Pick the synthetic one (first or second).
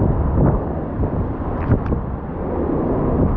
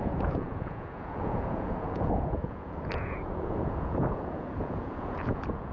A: second